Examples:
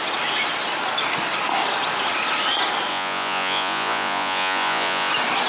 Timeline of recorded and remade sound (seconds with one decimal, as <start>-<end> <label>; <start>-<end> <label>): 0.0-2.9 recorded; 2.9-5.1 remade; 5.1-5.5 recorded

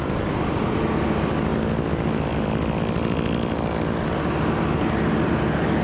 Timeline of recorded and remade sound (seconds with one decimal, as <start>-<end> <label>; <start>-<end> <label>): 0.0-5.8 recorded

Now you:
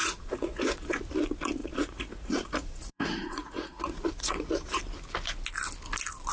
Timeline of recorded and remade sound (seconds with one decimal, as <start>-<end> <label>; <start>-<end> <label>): 0.0-1.0 remade; 1.0-1.6 recorded; 1.6-4.8 remade; 4.8-6.3 recorded

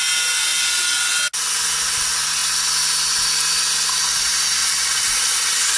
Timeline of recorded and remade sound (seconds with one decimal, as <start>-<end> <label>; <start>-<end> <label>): 0.0-4.6 recorded; 4.6-5.8 remade

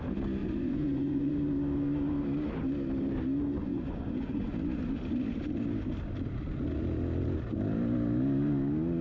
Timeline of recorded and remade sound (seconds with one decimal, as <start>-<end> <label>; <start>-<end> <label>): 0.0-0.4 recorded; 0.4-1.3 remade; 1.3-3.6 recorded; 3.6-4.5 remade; 4.5-9.0 recorded

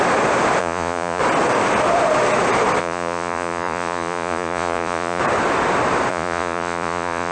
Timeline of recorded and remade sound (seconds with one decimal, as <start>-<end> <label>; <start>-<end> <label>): 0.0-0.6 recorded; 0.6-1.2 remade; 1.2-2.8 recorded; 2.8-5.2 remade; 5.2-6.1 recorded; 6.1-7.3 remade

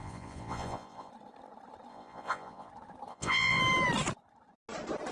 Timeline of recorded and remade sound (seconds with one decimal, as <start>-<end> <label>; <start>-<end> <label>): 0.0-1.1 remade; 1.1-1.9 recorded; 1.9-2.7 remade; 2.7-3.1 recorded; 3.1-3.6 remade; 3.6-5.1 recorded